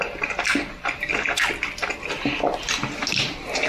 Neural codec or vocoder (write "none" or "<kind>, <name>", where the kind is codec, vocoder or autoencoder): none